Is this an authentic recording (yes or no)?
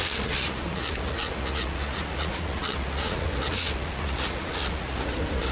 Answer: no